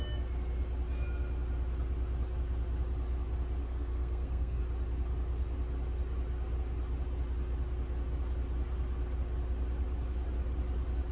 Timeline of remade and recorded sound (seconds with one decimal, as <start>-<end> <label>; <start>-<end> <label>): 0.0-3.6 recorded; 3.6-4.6 remade; 4.6-11.1 recorded